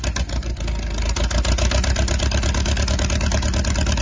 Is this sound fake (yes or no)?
no